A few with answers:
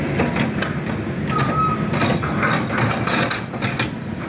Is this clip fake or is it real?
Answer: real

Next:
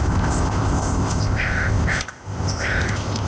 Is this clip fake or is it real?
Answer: fake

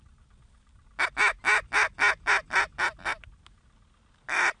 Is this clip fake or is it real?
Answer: real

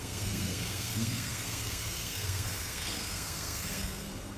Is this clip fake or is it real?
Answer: fake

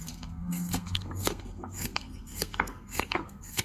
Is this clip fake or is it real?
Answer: fake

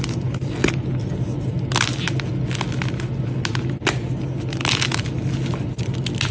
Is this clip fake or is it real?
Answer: real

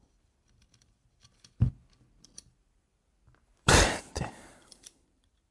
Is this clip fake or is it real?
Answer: fake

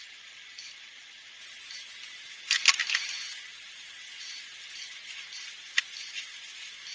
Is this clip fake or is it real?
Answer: real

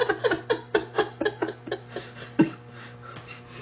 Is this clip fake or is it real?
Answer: real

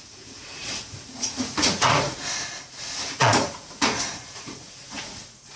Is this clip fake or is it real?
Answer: fake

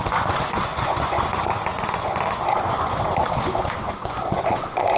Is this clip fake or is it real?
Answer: fake